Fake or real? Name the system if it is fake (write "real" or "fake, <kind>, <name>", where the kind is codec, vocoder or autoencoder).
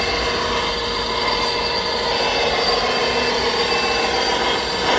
real